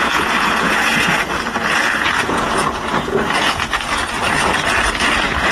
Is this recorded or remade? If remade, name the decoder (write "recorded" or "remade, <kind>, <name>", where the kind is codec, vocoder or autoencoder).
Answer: remade, vocoder, Vocos